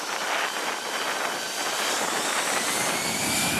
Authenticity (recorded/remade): recorded